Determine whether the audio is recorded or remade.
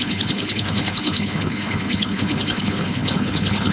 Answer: remade